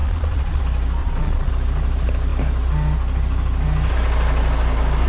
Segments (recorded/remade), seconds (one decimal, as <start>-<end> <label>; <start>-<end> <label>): 0.0-0.6 remade; 0.6-1.0 recorded; 1.0-1.5 remade; 1.5-5.1 recorded